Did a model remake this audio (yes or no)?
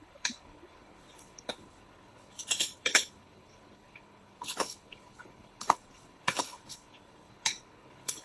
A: yes